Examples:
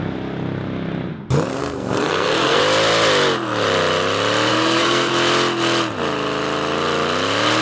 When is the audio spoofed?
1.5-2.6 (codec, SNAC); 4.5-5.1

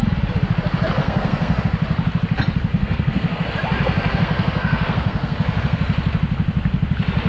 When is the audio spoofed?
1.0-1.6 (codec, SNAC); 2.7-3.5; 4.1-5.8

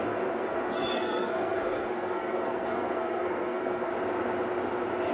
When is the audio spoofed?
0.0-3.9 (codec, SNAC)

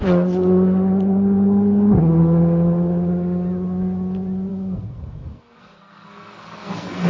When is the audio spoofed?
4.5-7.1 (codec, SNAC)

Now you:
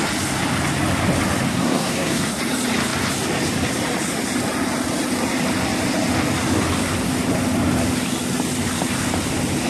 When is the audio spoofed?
1.5-2.4 (codec, SNAC)

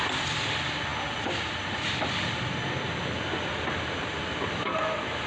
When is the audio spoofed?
none

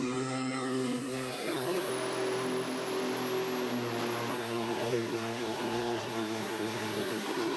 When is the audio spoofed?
0.0-1.9 (codec, SNAC); 4.3-7.6